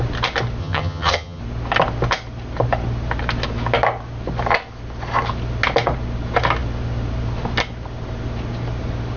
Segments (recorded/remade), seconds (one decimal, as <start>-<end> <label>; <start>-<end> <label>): 0.0-0.6 recorded; 0.6-1.4 remade; 1.4-9.2 recorded